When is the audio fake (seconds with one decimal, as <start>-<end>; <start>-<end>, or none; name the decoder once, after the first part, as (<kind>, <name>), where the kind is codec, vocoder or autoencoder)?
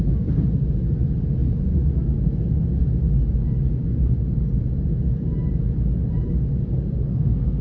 7.1-7.6 (codec, SNAC)